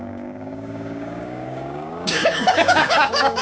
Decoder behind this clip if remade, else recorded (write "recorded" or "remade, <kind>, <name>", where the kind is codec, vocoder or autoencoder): remade, codec, DAC